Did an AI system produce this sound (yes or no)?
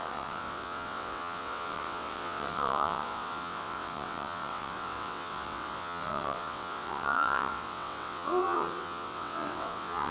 yes